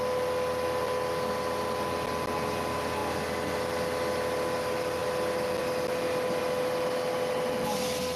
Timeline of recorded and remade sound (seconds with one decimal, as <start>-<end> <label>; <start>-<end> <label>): 0.0-8.2 recorded